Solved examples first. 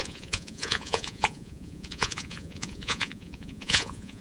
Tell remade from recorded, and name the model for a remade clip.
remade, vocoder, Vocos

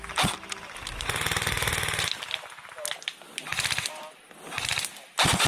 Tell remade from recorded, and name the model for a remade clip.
recorded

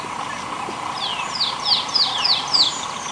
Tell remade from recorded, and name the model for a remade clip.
recorded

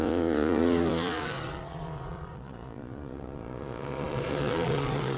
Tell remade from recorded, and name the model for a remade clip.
remade, vocoder, Vocos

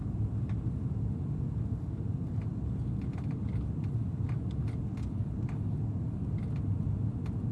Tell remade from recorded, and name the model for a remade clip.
recorded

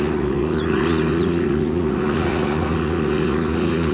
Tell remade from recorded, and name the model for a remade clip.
remade, vocoder, Vocos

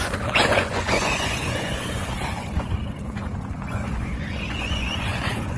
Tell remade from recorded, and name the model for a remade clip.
remade, vocoder, Vocos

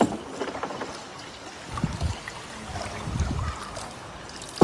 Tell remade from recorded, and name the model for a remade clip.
recorded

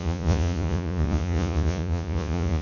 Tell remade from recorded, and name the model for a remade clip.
remade, vocoder, Vocos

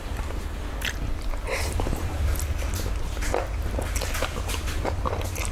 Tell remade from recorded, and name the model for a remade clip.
recorded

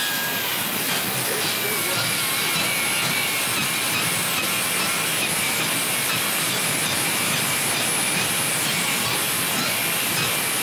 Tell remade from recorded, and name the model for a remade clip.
recorded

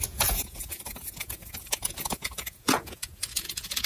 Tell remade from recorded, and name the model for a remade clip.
remade, vocoder, Vocos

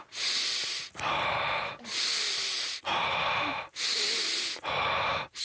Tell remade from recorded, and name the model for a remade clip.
recorded